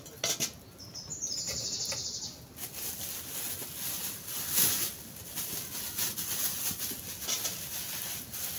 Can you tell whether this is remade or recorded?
recorded